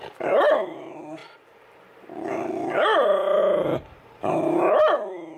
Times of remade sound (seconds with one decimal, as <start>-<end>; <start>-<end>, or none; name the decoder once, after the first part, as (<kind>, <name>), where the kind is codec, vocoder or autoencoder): 0.0-5.4 (vocoder, BigVGAN v2)